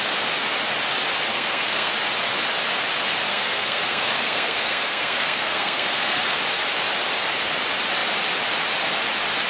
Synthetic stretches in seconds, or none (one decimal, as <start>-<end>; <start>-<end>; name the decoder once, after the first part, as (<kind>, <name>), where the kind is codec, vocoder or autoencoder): 1.3-1.9 (codec, SNAC); 3.3-6.4